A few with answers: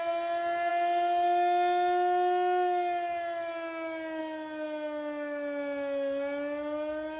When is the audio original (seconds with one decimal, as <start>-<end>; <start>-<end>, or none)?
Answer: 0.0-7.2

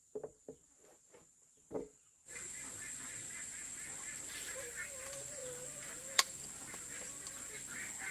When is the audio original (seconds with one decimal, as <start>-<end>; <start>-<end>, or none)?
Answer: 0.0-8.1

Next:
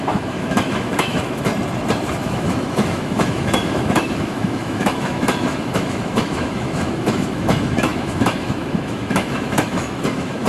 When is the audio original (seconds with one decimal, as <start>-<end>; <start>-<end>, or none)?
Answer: 1.5-2.1